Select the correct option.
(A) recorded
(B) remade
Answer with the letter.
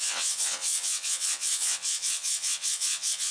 B